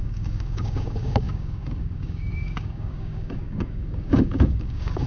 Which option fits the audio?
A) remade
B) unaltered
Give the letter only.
A